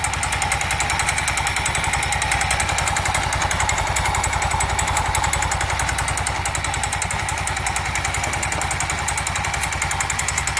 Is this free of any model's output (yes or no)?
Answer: yes